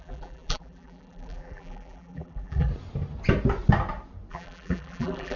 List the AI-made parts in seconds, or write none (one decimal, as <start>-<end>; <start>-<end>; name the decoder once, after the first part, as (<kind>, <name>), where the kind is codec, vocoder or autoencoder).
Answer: 0.0-2.7 (vocoder, BigVGAN v2); 4.3-5.4